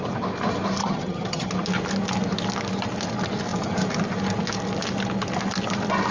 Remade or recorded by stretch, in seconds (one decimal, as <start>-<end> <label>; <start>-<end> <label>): 0.0-0.8 recorded; 0.8-1.5 remade; 1.5-6.1 recorded